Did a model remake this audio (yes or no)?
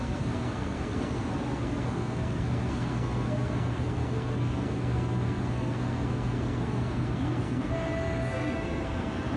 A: yes